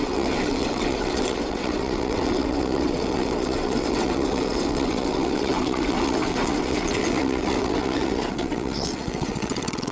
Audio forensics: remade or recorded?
remade